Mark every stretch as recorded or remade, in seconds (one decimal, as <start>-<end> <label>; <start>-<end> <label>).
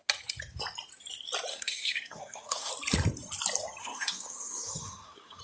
0.0-1.5 recorded; 1.5-2.7 remade; 2.7-3.8 recorded; 3.8-5.4 remade